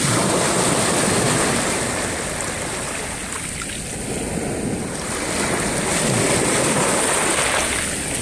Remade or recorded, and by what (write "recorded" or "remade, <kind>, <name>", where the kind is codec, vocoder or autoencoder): recorded